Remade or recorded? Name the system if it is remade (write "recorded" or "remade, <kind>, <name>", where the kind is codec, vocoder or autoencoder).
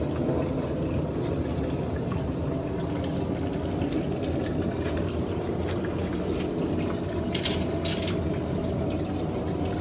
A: recorded